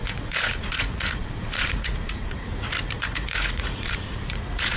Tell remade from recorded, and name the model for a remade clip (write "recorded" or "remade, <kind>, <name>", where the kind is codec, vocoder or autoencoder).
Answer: remade, vocoder, Vocos